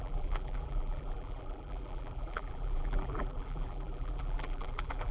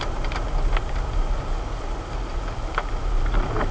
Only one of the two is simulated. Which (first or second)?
first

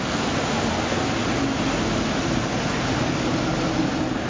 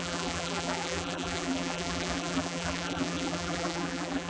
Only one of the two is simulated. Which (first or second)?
second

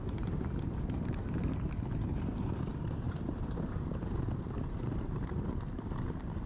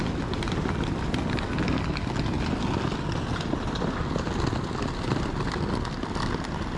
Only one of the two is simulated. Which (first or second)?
first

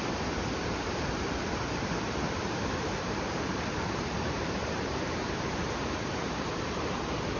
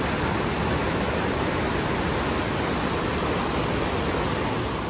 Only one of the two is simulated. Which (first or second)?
first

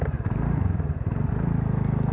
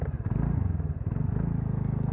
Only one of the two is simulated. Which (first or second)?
first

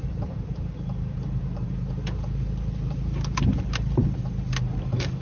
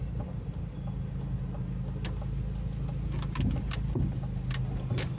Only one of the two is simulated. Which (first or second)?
first